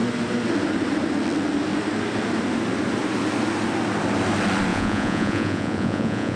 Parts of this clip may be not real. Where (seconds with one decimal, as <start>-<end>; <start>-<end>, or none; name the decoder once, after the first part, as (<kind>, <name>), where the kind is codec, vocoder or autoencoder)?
4.7-6.4 (vocoder, Vocos)